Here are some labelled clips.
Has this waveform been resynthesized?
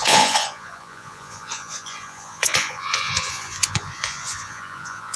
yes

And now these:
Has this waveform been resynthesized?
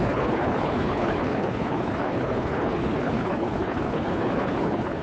yes